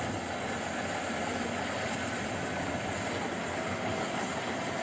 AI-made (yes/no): no